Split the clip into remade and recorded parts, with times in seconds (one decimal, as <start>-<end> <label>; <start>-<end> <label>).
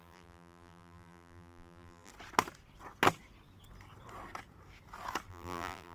0.0-2.1 remade; 2.1-5.3 recorded; 5.3-5.9 remade